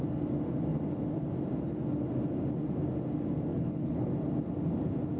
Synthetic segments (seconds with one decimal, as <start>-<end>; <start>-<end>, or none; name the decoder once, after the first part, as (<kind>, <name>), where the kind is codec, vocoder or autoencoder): 3.5-4.1 (codec, HILCodec)